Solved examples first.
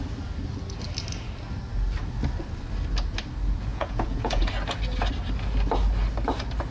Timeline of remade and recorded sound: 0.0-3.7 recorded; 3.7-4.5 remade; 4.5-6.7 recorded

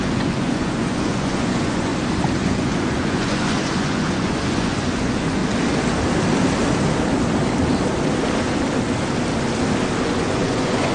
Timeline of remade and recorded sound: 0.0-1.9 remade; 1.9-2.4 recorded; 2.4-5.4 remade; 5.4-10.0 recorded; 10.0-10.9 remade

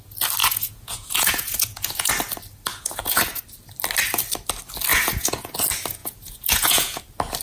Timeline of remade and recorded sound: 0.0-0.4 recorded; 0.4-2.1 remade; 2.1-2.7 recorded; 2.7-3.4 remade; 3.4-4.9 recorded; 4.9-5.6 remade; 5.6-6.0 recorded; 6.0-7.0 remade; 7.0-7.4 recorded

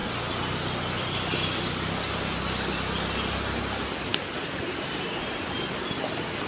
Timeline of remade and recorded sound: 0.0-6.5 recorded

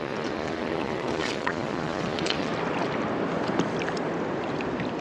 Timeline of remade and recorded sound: 0.0-2.5 remade; 2.5-5.0 recorded

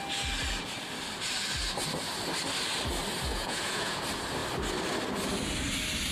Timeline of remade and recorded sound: 0.0-3.3 recorded; 3.3-4.0 remade; 4.0-6.1 recorded

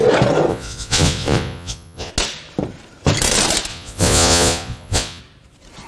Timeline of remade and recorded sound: 0.0-0.5 recorded; 0.5-2.1 remade; 2.1-3.7 recorded; 3.7-5.2 remade; 5.2-5.9 recorded